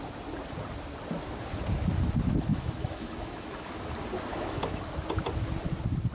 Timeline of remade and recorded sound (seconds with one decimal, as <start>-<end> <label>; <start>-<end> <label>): 0.0-2.5 recorded; 2.5-3.8 remade; 3.8-4.3 recorded; 4.3-4.8 remade; 4.8-6.1 recorded